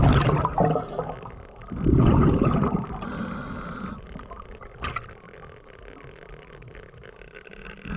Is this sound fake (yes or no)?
no